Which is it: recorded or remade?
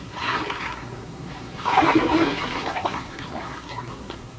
remade